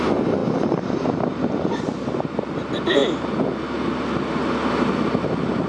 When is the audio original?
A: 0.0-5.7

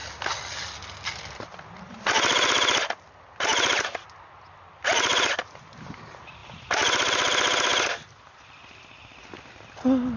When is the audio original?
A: 0.0-6.4; 9.5-10.2

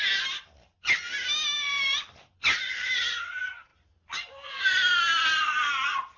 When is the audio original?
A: 0.0-6.2

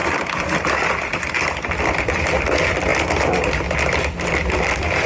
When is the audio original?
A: 2.9-4.3

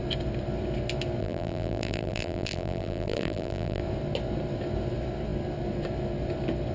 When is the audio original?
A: 0.0-1.2; 3.8-6.7

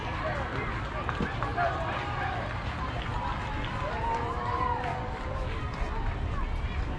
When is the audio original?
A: 0.0-4.9; 5.6-7.0

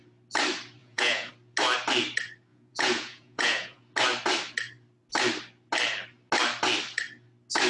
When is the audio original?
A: 0.0-0.8; 1.3-2.5; 3.8-7.7

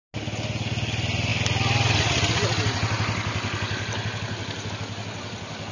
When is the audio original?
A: 0.0-5.7